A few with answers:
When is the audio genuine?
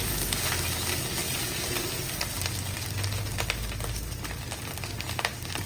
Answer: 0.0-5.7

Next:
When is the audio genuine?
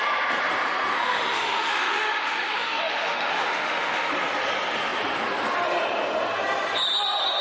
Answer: 0.0-0.9; 4.1-7.4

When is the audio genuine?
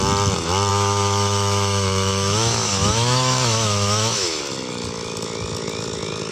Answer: 0.0-0.7; 4.4-6.3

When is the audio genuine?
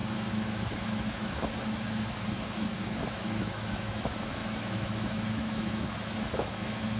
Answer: none